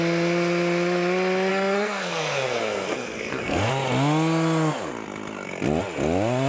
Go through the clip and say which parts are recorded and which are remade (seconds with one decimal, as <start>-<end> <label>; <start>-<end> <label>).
0.0-1.5 recorded; 1.5-3.7 remade; 3.7-6.5 recorded

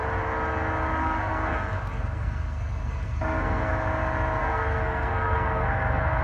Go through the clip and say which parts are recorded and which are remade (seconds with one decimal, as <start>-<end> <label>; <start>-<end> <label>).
0.0-1.0 recorded; 1.0-3.7 remade; 3.7-4.4 recorded; 4.4-6.2 remade

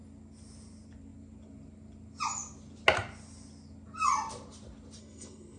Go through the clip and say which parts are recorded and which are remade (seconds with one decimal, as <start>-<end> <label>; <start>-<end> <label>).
0.0-5.0 recorded; 5.0-5.6 remade

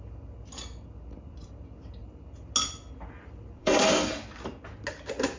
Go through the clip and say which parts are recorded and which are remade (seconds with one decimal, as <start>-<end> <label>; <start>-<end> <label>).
0.0-3.6 recorded; 3.6-4.1 remade; 4.1-5.4 recorded

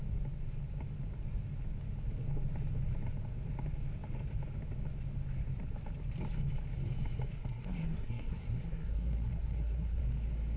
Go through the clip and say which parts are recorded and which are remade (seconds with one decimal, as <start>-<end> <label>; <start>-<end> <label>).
0.0-7.4 recorded; 7.4-10.0 remade; 10.0-10.6 recorded

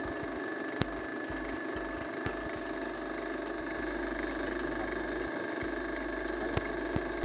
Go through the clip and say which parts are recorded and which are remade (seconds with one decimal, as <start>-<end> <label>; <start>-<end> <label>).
0.0-7.2 recorded